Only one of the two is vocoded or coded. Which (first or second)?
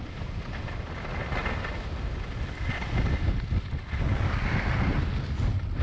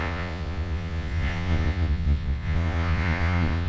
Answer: second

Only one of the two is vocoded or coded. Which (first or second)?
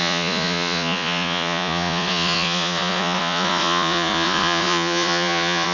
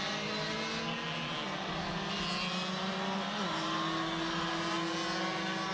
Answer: first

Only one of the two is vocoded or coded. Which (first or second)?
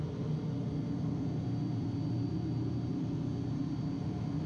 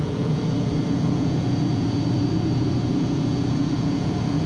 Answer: second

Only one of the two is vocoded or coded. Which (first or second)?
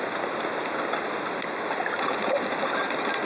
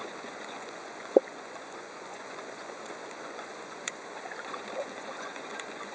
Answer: second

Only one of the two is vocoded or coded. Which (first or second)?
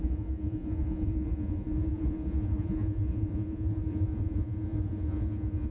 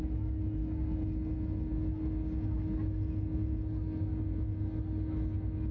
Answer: first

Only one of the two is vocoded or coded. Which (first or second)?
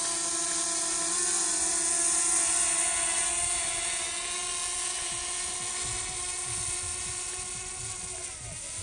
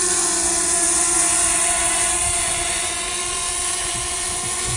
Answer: second